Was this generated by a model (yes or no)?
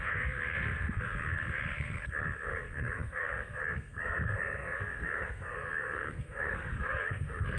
yes